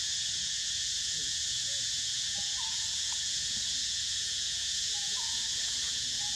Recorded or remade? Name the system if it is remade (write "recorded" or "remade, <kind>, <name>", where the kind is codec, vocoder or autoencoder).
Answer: remade, vocoder, Vocos